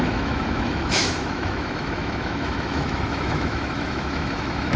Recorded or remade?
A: remade